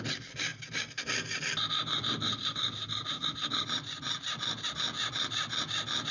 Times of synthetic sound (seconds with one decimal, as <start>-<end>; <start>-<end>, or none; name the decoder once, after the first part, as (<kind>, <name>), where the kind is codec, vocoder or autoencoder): none